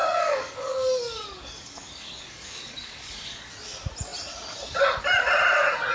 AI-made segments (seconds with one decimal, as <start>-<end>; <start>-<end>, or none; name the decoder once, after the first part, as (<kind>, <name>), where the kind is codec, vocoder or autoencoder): 0.0-3.5 (codec, DAC)